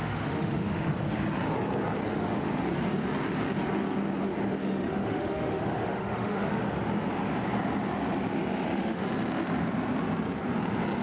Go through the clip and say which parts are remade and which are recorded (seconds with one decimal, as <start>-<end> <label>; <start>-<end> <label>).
0.0-0.9 remade; 0.9-2.1 recorded; 2.1-2.6 remade; 2.6-4.6 recorded; 4.6-6.5 remade; 6.5-8.5 recorded; 8.5-9.0 remade; 9.0-11.0 recorded